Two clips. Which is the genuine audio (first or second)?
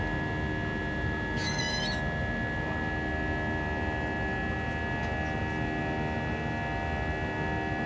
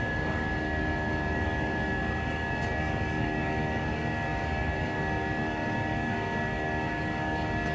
first